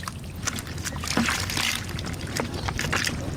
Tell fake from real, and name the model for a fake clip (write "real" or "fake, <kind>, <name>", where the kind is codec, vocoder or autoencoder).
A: fake, vocoder, BigVGAN v2